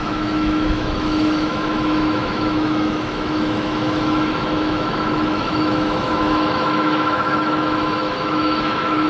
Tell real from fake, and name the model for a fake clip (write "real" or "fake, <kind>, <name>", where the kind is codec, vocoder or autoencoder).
fake, autoencoder, DAC-VAE